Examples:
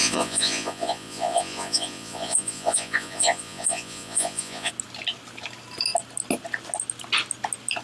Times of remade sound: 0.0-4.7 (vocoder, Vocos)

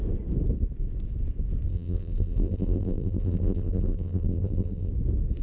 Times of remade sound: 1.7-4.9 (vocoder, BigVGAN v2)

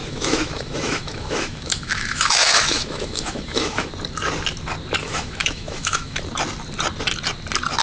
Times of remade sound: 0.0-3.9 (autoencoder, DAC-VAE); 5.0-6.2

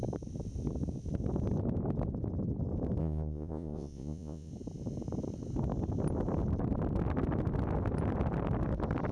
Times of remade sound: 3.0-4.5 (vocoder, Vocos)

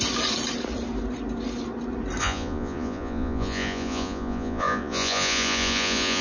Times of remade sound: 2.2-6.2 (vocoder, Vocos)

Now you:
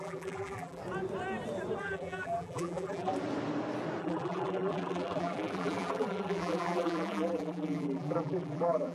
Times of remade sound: 0.0-0.8 (vocoder, BigVGAN v2); 1.8-3.1; 4.0-8.9

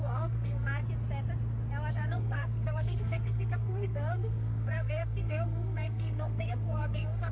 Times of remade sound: 0.0-0.8 (codec, SNAC); 1.9-7.3